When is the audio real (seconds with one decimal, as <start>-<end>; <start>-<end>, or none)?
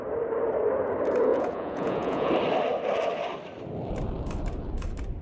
0.0-1.3; 2.3-5.2